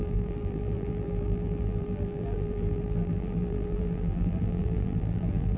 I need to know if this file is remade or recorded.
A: remade